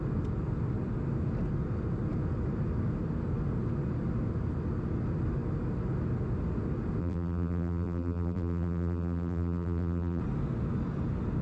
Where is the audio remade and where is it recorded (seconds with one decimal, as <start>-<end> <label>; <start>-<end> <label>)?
0.0-7.0 recorded; 7.0-10.2 remade; 10.2-11.4 recorded